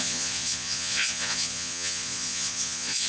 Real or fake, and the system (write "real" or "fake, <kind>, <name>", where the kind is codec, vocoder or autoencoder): fake, vocoder, Vocos